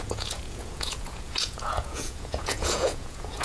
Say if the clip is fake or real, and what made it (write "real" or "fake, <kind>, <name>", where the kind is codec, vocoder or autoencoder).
fake, vocoder, Vocos